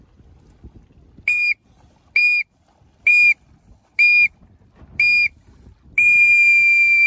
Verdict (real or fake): real